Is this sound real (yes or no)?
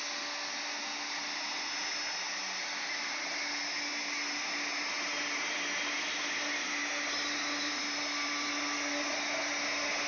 yes